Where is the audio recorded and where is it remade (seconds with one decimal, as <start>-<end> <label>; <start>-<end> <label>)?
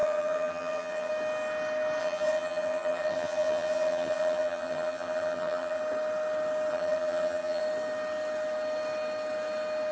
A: 0.0-1.1 remade; 1.1-2.0 recorded; 2.0-5.8 remade; 5.8-6.7 recorded; 6.7-7.6 remade; 7.6-9.9 recorded